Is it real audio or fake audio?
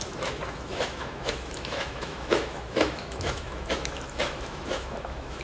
fake